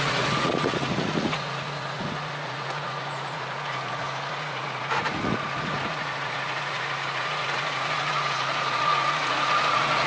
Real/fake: fake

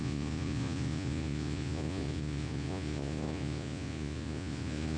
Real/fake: fake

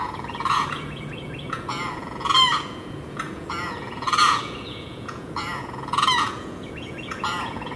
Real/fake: fake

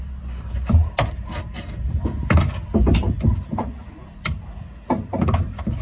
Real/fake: real